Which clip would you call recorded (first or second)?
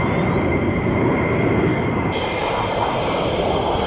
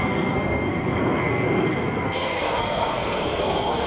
first